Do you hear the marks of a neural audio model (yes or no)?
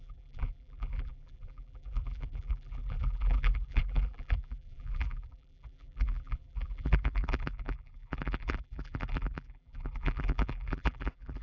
yes